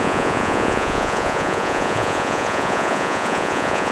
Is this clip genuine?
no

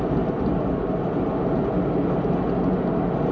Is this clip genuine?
yes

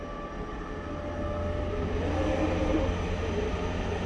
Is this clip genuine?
yes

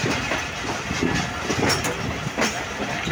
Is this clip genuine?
yes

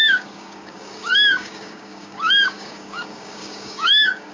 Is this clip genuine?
no